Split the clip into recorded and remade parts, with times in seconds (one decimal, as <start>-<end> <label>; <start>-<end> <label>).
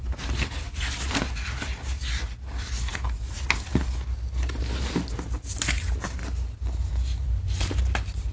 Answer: 0.0-8.3 recorded